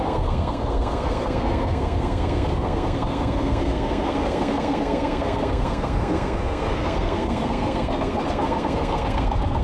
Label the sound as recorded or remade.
remade